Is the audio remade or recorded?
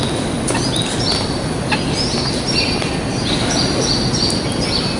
recorded